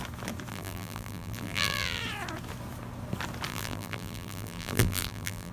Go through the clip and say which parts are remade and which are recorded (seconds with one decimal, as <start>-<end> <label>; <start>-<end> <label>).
0.0-0.5 recorded; 0.5-2.0 remade; 2.0-3.5 recorded; 3.5-5.5 remade